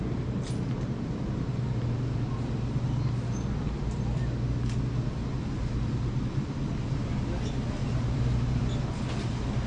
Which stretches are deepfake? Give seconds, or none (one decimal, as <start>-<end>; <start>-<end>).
7.8-8.6